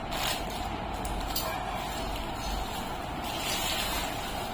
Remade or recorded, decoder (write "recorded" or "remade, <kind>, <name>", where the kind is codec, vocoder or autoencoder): recorded